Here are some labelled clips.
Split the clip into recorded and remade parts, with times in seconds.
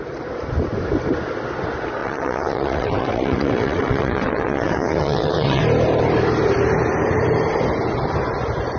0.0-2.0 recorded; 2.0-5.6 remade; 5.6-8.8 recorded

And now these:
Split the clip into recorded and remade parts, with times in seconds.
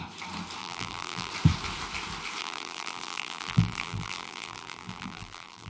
0.0-0.6 recorded; 0.6-1.3 remade; 1.3-2.4 recorded; 2.4-5.7 remade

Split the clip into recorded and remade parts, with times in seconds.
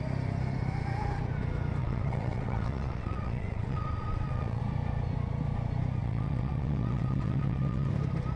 0.0-1.8 recorded; 1.8-4.6 remade; 4.6-6.0 recorded; 6.0-7.9 remade; 7.9-8.4 recorded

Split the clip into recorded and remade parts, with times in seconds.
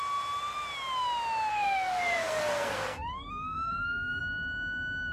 0.0-1.5 recorded; 1.5-4.2 remade; 4.2-5.1 recorded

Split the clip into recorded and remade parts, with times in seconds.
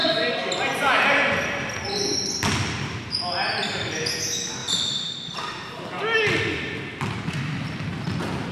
0.0-4.6 recorded; 4.6-5.7 remade; 5.7-8.5 recorded